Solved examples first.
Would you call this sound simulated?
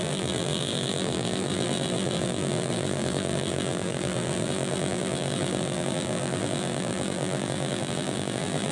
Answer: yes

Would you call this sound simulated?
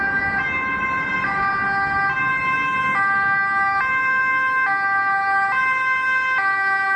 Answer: no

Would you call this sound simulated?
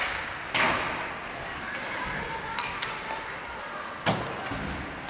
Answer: no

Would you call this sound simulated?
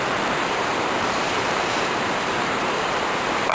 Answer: yes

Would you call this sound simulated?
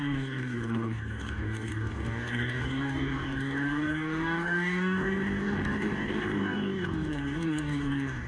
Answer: yes